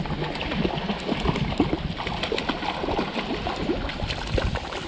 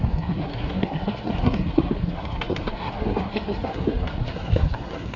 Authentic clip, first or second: first